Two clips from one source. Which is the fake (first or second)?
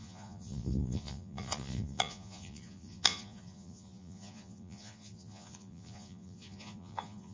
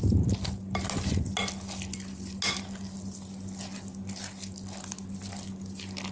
first